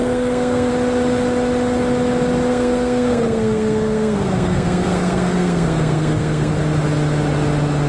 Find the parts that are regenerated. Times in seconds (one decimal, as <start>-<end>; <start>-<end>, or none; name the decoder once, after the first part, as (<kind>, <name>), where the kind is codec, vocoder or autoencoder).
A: 0.0-0.7 (codec, SNAC); 2.5-6.5